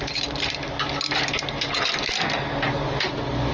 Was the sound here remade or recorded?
recorded